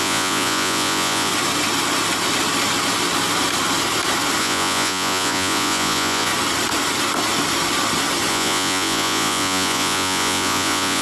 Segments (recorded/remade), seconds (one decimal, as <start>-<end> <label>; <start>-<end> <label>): 0.0-1.3 remade; 1.3-4.4 recorded; 4.4-6.3 remade; 6.3-8.3 recorded; 8.3-11.0 remade

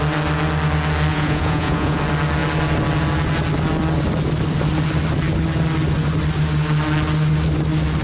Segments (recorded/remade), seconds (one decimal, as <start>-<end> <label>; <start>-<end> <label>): 0.0-1.1 recorded; 1.1-2.0 remade; 2.0-8.0 recorded

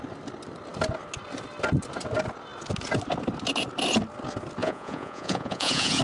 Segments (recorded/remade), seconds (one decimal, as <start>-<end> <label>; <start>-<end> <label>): 0.0-4.6 recorded; 4.6-6.0 remade

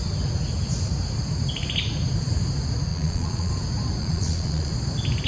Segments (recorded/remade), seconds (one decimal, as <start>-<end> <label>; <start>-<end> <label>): 0.0-2.9 recorded; 2.9-3.5 remade; 3.5-4.0 recorded; 4.0-4.7 remade; 4.7-5.3 recorded

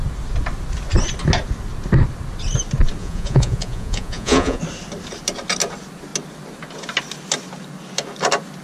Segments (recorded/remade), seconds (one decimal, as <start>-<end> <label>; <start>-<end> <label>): 0.0-3.0 recorded; 3.0-4.6 remade; 4.6-8.6 recorded